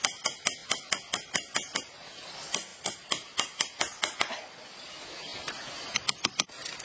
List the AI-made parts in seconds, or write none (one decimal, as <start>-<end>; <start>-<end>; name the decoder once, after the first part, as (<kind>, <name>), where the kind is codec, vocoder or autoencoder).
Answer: none